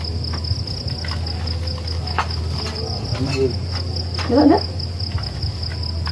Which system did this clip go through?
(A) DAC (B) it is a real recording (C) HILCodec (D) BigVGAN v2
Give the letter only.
B